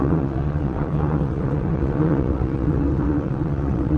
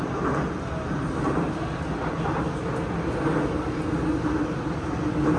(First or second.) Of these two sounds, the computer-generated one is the first